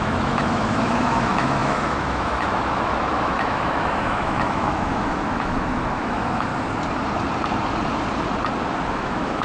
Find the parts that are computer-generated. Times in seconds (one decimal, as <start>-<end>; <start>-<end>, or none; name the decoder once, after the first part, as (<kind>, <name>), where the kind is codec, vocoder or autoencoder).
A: 0.0-6.5 (autoencoder, DAC-VAE); 8.9-9.4